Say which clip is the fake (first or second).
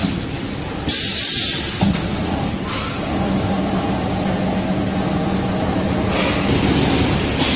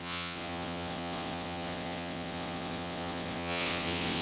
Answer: second